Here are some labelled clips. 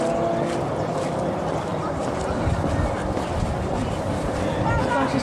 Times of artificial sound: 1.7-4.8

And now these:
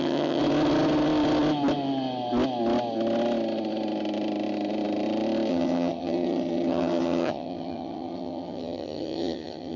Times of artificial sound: 0.0-0.4; 5.5-9.8

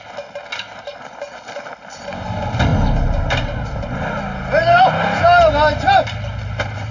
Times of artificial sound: none